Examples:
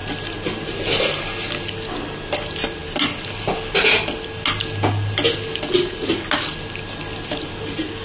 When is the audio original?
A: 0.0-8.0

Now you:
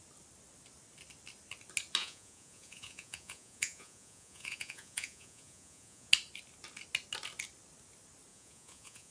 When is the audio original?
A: 0.0-2.0; 6.1-8.3

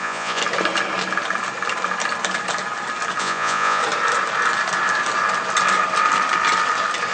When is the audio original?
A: 0.4-3.2; 3.8-7.1

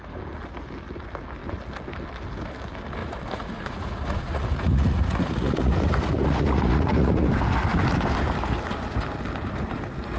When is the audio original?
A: 0.0-3.0; 7.3-10.2

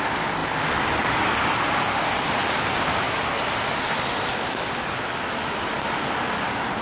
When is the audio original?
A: 0.0-6.8

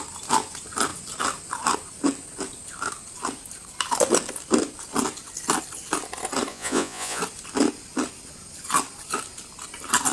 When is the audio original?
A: 0.0-6.5; 7.2-10.1